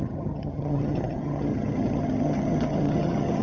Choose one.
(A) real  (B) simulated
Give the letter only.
B